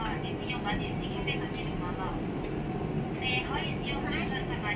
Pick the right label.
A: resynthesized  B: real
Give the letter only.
B